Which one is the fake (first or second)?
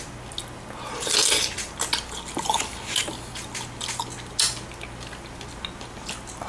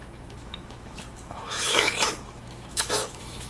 second